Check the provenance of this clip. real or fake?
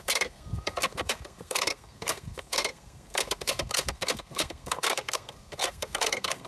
fake